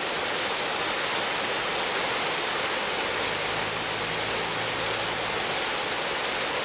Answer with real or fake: real